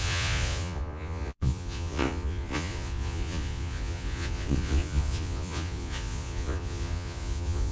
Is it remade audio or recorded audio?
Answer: remade